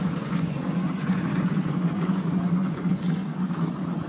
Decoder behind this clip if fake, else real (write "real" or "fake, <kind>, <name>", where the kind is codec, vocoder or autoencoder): fake, vocoder, Vocos